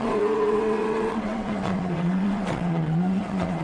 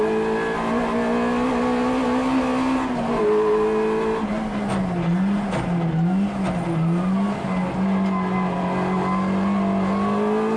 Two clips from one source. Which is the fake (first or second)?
first